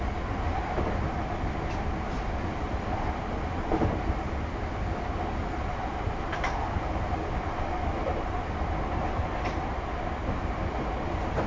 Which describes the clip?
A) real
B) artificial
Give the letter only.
A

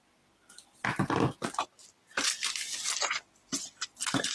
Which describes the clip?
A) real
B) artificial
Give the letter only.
A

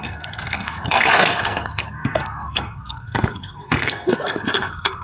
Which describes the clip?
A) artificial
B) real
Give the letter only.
A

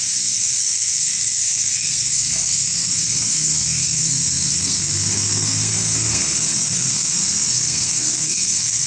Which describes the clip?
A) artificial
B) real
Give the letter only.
A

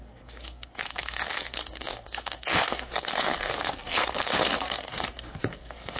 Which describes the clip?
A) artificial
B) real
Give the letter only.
A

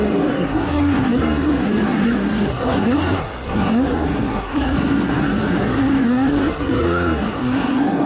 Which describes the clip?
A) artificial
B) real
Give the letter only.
A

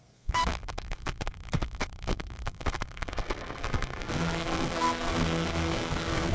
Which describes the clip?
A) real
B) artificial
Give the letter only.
B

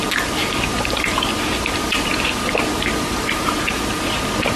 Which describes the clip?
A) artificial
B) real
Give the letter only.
B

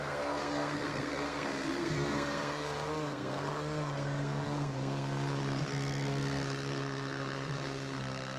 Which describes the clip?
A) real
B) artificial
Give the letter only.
B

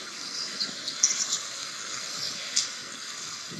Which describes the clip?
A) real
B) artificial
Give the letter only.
B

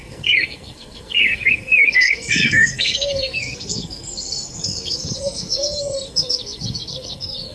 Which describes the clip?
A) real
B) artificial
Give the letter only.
B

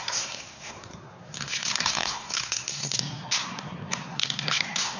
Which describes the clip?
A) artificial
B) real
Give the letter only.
A